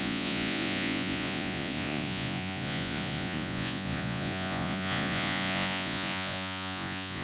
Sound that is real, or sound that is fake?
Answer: fake